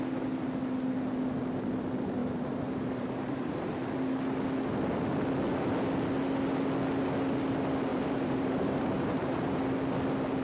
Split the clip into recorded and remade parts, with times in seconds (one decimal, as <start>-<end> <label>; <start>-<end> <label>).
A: 0.0-2.2 recorded; 2.2-3.8 remade; 3.8-7.9 recorded; 7.9-9.6 remade; 9.6-10.4 recorded